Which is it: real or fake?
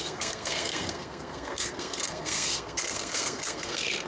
fake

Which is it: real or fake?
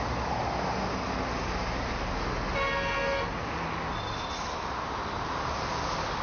real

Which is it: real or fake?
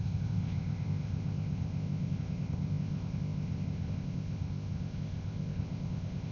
fake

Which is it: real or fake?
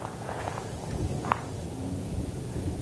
fake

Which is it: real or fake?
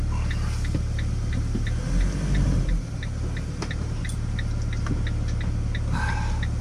real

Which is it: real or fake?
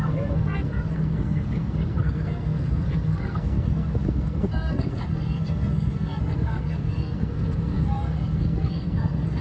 fake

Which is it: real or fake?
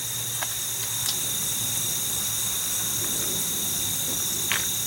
real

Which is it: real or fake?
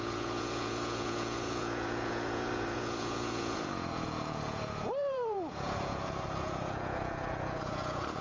fake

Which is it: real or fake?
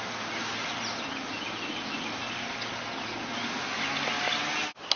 real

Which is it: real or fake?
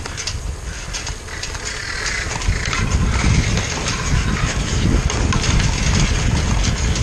real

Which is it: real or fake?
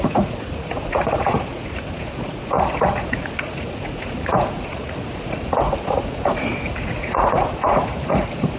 fake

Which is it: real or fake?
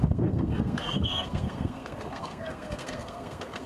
fake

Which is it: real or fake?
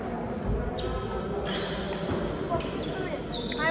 real